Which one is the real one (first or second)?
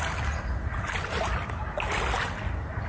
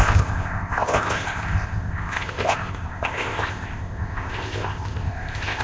first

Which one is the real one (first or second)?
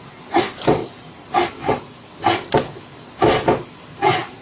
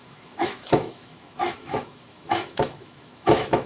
first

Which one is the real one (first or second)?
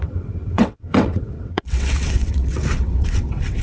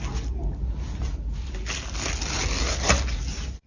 second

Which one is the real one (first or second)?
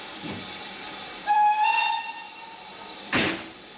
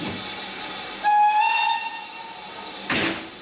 second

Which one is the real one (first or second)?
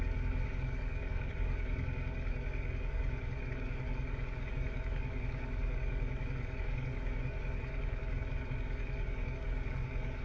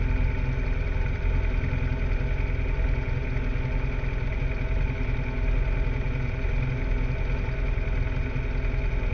second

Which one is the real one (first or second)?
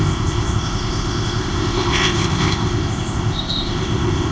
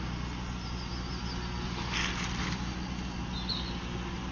second